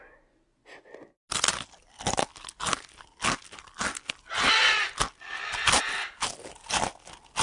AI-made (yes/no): no